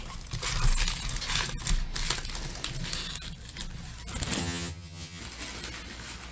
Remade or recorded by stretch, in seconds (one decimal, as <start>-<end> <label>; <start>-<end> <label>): 0.0-4.4 recorded; 4.4-5.2 remade; 5.2-6.3 recorded